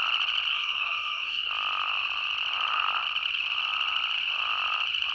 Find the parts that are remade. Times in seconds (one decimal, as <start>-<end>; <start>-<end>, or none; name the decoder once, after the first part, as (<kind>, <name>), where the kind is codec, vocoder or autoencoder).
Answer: 0.5-1.5 (codec, SNAC)